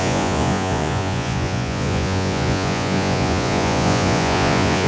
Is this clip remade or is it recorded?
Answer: remade